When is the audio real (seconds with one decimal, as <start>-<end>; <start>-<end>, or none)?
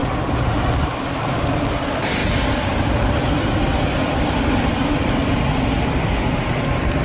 2.2-2.9; 3.7-6.4